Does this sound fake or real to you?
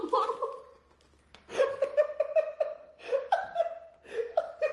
real